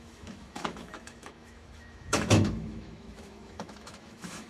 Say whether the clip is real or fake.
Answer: fake